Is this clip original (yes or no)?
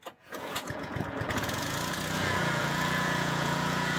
no